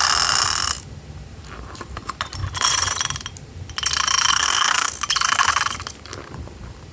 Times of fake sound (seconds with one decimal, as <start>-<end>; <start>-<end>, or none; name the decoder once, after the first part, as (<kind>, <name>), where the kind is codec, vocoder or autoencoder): 4.3-4.9 (codec, SNAC)

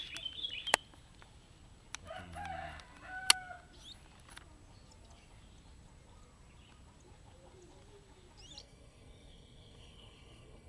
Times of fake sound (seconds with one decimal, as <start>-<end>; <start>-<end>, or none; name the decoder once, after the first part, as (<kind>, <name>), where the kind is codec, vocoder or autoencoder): 8.6-10.7 (codec, SNAC)

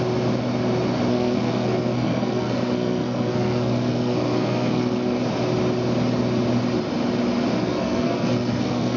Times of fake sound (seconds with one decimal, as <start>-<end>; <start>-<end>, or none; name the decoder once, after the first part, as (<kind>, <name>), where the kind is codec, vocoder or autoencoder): 1.1-5.2 (codec, SNAC); 7.6-9.0

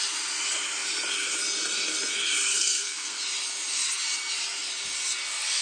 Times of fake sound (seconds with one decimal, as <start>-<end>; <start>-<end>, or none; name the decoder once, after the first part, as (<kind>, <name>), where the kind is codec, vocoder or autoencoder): 2.5-3.2 (codec, SNAC)

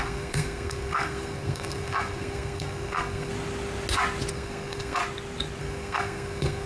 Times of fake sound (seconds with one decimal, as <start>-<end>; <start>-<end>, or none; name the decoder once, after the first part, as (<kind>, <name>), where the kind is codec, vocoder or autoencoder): 0.0-3.3 (codec, SNAC); 4.3-5.0; 5.6-6.7